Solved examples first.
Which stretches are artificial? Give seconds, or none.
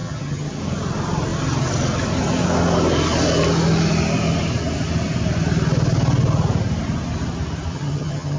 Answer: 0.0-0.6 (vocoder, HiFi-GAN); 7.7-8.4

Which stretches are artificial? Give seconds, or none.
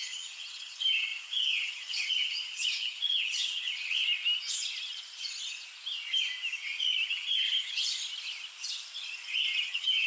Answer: 0.0-4.1 (vocoder, HiFi-GAN); 7.1-7.8; 9.6-10.1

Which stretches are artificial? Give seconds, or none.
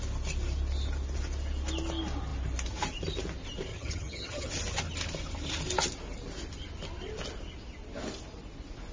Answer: 3.7-4.5 (vocoder, HiFi-GAN)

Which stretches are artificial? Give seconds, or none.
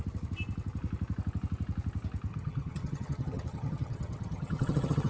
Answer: 2.3-5.1 (vocoder, HiFi-GAN)